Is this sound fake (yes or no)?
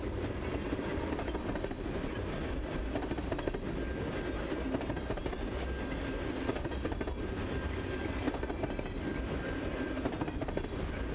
no